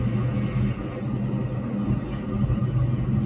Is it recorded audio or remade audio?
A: recorded